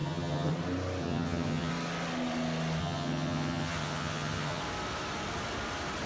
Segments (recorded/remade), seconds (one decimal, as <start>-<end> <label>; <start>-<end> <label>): 0.0-0.5 remade; 0.5-1.0 recorded; 1.0-1.7 remade; 1.7-2.8 recorded; 2.8-4.6 remade; 4.6-6.1 recorded